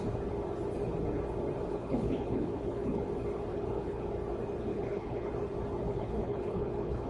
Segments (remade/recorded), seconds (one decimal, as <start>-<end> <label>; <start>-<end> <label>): 0.0-1.7 recorded; 1.7-3.0 remade; 3.0-3.5 recorded; 3.5-4.0 remade; 4.0-4.7 recorded; 4.7-5.3 remade; 5.3-5.9 recorded; 5.9-7.1 remade